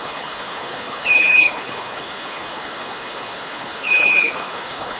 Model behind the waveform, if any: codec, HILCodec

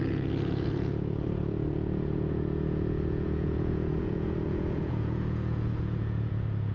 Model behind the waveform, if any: vocoder, Vocos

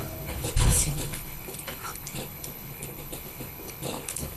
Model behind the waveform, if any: codec, HILCodec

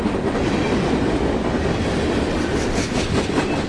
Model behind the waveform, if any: none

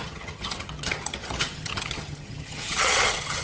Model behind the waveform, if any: vocoder, HiFi-GAN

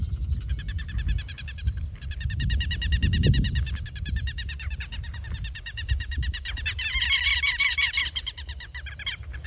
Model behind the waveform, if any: none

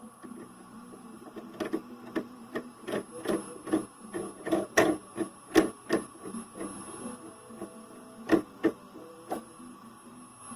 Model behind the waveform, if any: none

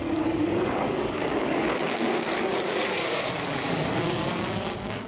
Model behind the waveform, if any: codec, DAC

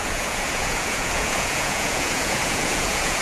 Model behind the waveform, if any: vocoder, Vocos